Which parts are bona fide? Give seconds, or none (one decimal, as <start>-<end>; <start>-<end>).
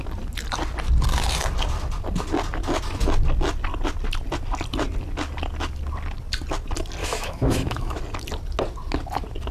0.0-7.0; 8.0-9.5